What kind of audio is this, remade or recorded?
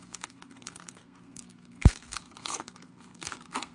remade